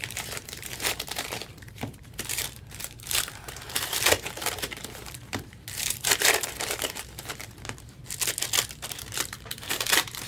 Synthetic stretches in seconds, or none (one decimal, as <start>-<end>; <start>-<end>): 0.0-8.0; 8.9-10.3